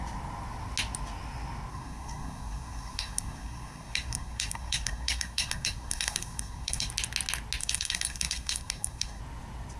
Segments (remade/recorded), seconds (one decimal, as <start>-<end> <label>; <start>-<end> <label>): 0.0-1.7 recorded; 1.7-6.9 remade; 6.9-7.6 recorded; 7.6-9.2 remade; 9.2-9.8 recorded